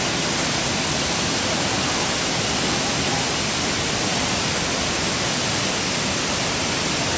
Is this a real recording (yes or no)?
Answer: yes